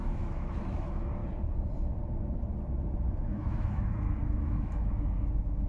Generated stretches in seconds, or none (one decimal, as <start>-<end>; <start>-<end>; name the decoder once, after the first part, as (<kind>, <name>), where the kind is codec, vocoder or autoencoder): 0.0-1.2 (autoencoder, DAC-VAE); 3.2-5.7